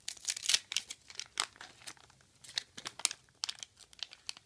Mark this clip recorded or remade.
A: recorded